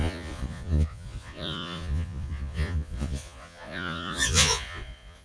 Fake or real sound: fake